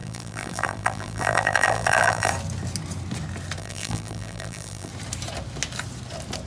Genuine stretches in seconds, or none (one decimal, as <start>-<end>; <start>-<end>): 2.3-3.6; 4.9-6.5